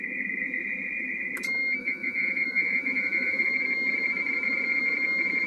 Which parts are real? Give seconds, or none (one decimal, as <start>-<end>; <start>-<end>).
0.0-1.8; 3.5-5.5

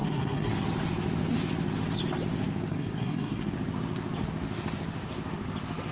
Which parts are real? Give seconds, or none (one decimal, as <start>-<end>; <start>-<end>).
0.5-2.7; 3.5-5.9

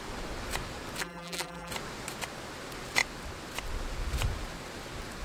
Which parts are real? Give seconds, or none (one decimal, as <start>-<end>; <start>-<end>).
0.0-1.0; 1.7-5.2

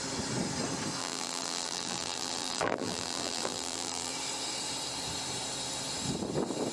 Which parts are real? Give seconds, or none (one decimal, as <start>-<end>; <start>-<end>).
0.0-1.0; 4.1-6.7

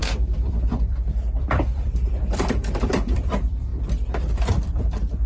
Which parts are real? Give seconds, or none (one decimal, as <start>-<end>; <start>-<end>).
none